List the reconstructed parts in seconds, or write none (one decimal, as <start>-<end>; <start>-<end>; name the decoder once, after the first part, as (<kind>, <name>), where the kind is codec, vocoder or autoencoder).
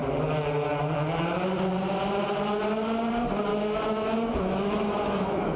3.5-5.6 (autoencoder, DAC-VAE)